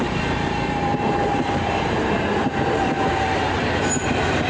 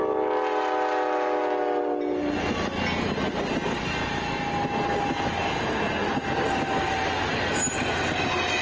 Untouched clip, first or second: second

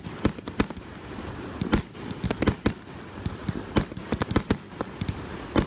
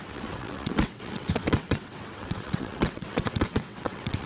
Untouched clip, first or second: first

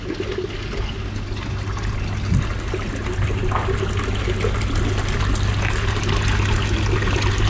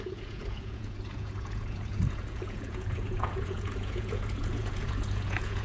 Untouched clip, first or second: first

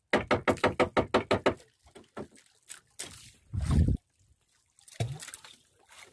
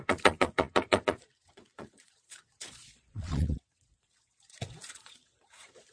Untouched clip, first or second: first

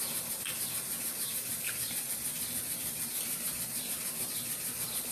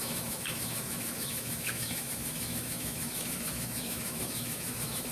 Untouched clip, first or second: first